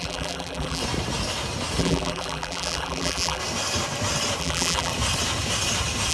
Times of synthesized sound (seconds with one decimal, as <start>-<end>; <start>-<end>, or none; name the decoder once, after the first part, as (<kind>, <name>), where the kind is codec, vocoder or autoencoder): 0.0-0.8 (vocoder, BigVGAN v2); 1.8-3.4; 4.4-4.9